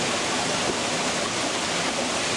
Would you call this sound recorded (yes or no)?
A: yes